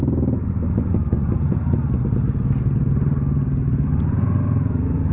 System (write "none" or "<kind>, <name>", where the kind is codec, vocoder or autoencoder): none